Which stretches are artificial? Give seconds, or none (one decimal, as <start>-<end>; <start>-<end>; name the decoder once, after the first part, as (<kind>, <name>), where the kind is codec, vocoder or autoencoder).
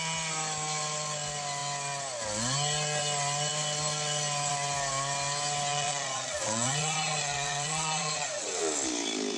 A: 5.7-8.6 (vocoder, Vocos)